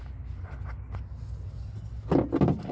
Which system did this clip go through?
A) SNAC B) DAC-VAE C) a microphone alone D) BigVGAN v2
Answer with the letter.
C